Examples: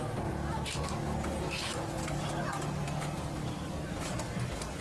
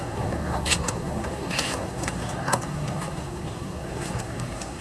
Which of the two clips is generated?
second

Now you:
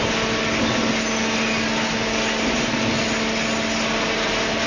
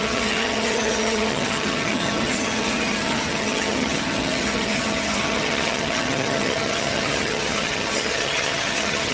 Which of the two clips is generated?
second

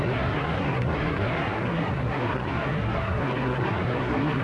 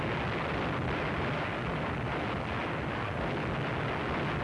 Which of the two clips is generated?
first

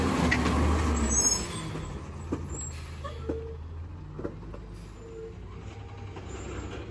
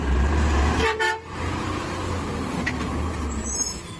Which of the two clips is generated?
second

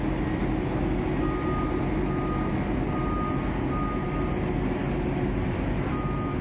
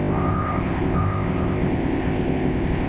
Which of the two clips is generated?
second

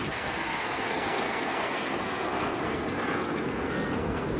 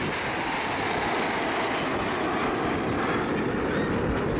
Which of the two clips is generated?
first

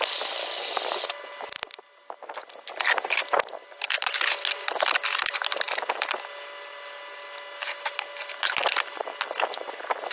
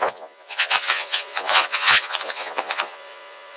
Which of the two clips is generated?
second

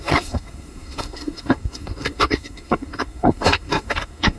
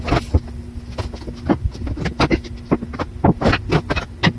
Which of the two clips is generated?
first